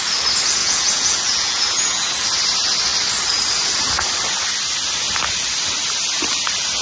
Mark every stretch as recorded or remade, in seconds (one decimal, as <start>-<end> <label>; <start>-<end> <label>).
0.0-0.6 recorded; 0.6-2.1 remade; 2.1-6.8 recorded